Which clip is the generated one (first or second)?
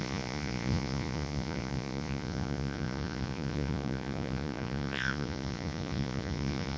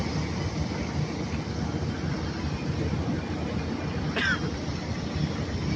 first